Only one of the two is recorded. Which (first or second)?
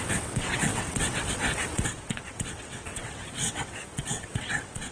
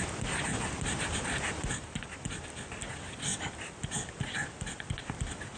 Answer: second